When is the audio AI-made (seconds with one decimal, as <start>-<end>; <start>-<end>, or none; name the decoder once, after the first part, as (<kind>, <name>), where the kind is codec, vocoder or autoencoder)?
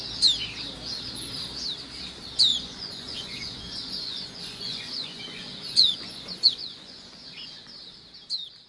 2.5-7.7 (vocoder, Vocos)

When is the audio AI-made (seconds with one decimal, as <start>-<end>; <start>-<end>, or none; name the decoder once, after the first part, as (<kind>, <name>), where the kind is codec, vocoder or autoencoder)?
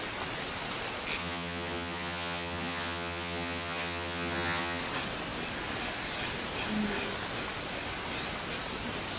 1.2-4.8 (vocoder, HiFi-GAN)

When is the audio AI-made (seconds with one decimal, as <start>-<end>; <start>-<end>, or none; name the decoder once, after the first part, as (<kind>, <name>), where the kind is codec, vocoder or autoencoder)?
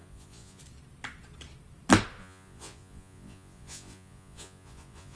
0.0-0.6 (vocoder, Vocos); 2.2-5.2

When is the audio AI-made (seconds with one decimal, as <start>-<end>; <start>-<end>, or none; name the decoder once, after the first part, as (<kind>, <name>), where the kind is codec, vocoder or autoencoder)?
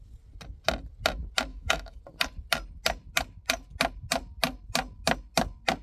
1.5-2.0 (autoencoder, DAC-VAE)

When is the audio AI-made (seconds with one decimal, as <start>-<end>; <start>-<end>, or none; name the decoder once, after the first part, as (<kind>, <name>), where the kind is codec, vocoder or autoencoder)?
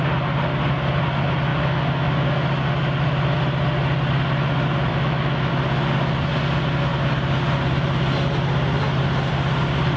1.5-2.5 (autoencoder, DAC-VAE); 4.9-5.5